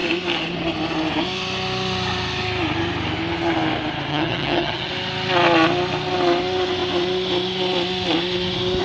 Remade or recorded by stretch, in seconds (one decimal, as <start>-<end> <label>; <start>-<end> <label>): 0.0-4.1 recorded; 4.1-4.9 remade; 4.9-8.8 recorded